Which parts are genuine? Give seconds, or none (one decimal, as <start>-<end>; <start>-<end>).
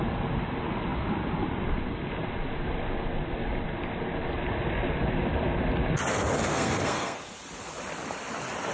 0.0-6.5; 7.2-8.7